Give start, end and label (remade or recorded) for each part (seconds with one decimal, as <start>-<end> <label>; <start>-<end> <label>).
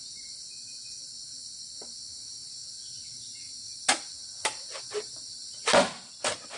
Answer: 0.0-6.6 recorded